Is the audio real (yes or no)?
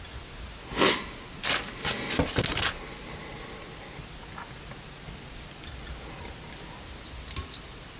yes